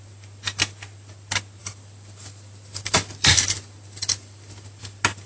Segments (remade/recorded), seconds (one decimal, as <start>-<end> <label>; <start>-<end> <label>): 0.0-1.6 recorded; 1.6-4.8 remade; 4.8-5.3 recorded